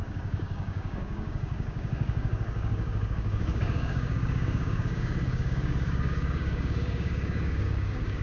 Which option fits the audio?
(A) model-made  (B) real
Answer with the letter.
A